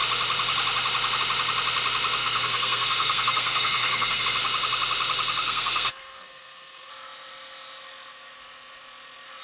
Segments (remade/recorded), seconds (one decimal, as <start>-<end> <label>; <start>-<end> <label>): 0.0-2.2 recorded; 2.2-4.2 remade; 4.2-5.4 recorded; 5.4-6.9 remade; 6.9-9.4 recorded